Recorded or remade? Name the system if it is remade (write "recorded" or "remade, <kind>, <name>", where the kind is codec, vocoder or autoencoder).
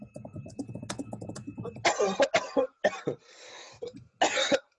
recorded